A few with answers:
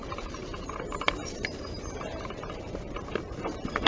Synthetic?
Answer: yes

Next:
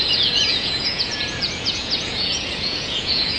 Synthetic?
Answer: yes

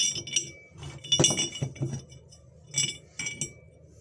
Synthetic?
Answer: no